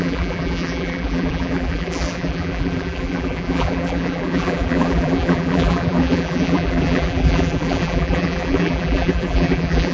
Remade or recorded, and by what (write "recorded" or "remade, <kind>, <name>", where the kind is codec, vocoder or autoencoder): remade, vocoder, BigVGAN v2